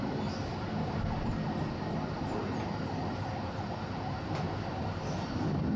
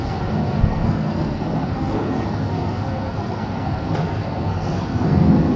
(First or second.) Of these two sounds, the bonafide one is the first